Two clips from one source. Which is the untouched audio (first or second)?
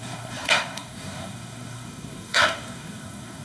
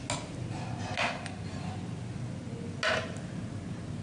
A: second